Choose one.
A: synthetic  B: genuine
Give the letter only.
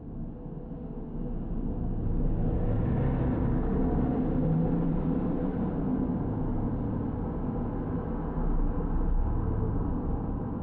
B